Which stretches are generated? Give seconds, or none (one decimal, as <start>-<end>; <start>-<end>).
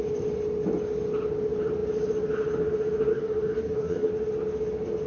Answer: 3.1-4.1